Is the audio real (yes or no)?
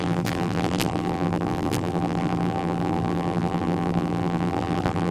no